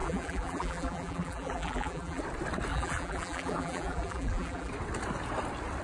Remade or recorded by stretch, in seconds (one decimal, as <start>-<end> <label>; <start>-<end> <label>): 0.0-2.2 remade; 2.2-2.7 recorded; 2.7-4.7 remade; 4.7-5.8 recorded